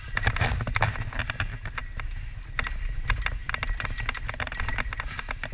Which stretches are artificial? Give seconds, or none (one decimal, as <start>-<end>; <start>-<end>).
none